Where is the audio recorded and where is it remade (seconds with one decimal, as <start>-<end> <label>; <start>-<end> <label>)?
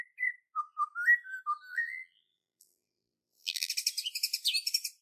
0.0-1.7 recorded; 1.7-3.7 remade; 3.7-5.0 recorded